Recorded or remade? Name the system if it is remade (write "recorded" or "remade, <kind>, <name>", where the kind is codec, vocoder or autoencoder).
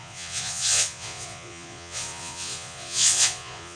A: remade, vocoder, Vocos